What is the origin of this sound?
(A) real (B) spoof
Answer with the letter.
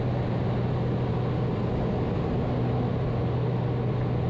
A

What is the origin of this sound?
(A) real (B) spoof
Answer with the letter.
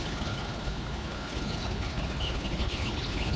B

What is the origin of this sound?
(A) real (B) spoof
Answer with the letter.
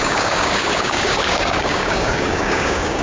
B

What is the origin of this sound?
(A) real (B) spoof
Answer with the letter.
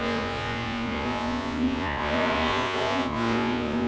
B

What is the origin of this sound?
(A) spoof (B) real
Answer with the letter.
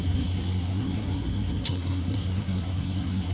A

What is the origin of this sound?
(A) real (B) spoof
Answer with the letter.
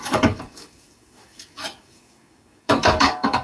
B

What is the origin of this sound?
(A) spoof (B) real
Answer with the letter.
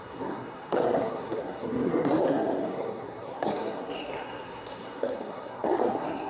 A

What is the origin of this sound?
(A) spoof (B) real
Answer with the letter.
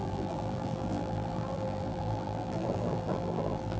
A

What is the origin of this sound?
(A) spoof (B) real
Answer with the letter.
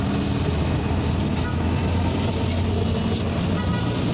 B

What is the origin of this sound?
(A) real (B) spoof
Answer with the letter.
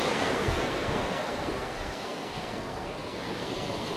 B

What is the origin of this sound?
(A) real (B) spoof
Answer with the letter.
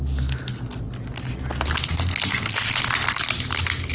A